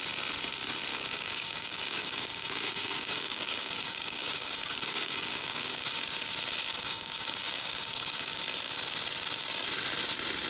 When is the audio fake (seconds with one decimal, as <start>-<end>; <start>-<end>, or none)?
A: 0.9-6.0; 6.7-8.4